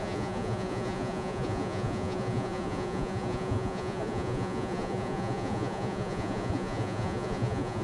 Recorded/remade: remade